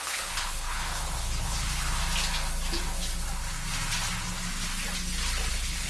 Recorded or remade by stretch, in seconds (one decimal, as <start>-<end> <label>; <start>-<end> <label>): 0.0-2.0 remade; 2.0-5.5 recorded; 5.5-5.9 remade